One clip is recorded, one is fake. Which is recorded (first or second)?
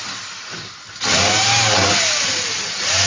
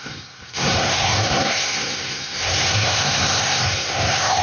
first